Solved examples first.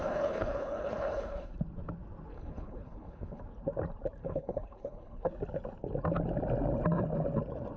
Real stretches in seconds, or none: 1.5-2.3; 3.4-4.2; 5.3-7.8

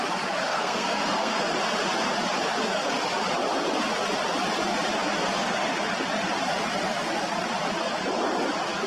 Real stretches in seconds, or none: 0.0-0.5; 1.4-8.9

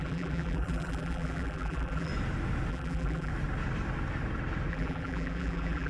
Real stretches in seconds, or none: 2.1-2.7; 3.3-4.7

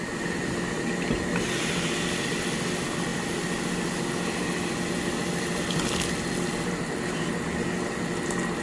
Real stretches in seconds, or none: 0.0-8.6